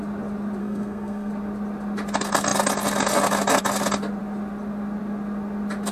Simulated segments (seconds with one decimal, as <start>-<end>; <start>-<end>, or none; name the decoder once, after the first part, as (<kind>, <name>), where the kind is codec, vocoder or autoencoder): 0.6-1.3 (codec, SNAC)